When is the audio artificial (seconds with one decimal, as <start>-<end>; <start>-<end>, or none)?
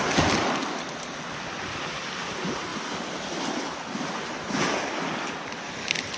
none